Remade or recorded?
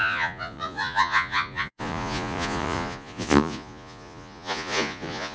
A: remade